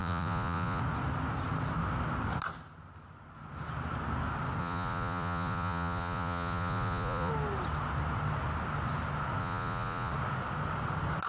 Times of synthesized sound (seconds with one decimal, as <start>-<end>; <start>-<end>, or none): 0.0-0.8; 4.6-7.3; 9.4-10.1